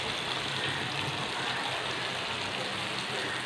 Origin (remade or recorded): recorded